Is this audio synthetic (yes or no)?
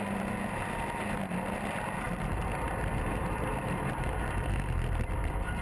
no